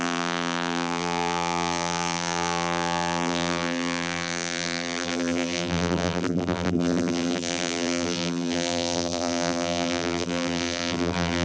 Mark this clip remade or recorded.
remade